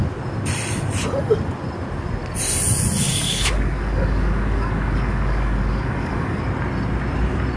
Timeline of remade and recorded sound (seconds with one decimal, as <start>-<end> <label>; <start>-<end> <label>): 0.0-3.1 recorded; 3.1-6.4 remade; 6.4-7.6 recorded